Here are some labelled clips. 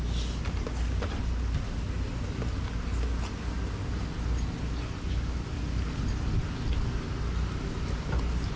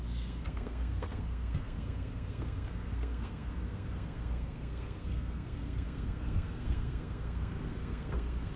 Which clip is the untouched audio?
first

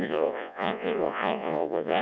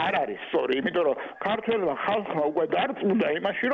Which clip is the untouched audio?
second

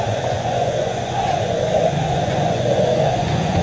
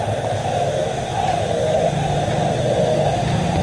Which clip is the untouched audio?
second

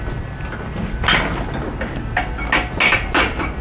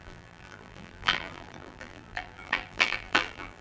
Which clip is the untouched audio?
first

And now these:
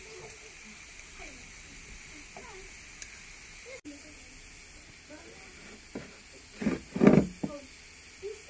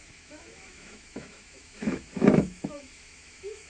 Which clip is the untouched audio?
first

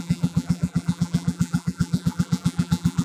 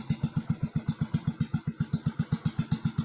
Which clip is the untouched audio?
second